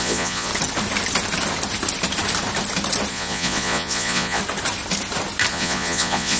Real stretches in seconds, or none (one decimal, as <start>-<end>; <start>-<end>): 0.5-3.1; 4.4-5.5